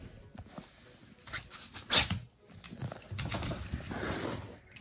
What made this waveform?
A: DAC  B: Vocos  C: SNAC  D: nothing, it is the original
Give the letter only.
D